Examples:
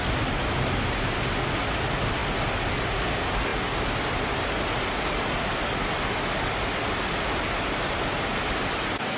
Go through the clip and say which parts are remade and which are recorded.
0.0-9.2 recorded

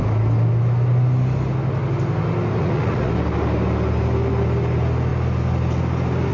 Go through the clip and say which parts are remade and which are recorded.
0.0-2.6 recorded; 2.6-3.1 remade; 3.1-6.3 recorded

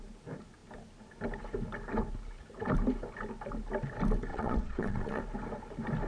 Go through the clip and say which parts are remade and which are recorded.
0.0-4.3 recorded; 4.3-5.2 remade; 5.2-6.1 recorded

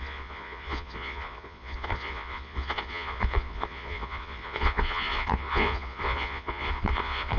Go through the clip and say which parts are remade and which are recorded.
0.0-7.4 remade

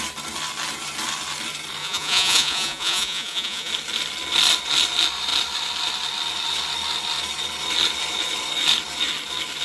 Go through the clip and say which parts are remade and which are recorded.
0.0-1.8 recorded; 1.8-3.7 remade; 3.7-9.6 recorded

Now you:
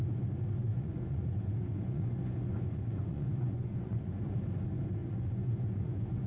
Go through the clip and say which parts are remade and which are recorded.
0.0-0.6 recorded; 0.6-4.4 remade; 4.4-5.0 recorded; 5.0-6.3 remade

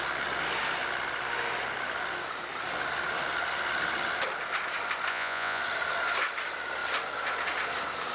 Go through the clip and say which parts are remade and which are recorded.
0.0-5.1 recorded; 5.1-5.6 remade; 5.6-8.1 recorded

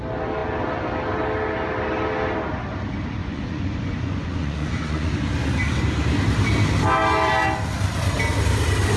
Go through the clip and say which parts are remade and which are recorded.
0.0-3.2 recorded; 3.2-5.1 remade; 5.1-9.0 recorded